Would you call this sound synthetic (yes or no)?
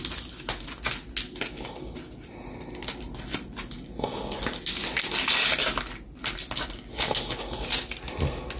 no